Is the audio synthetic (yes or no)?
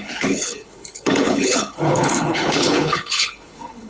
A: yes